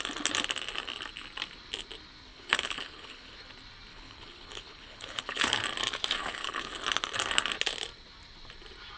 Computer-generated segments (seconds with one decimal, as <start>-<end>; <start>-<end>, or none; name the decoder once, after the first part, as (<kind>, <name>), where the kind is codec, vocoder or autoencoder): 2.3-3.3 (codec, HILCodec); 3.9-5.6; 6.2-6.7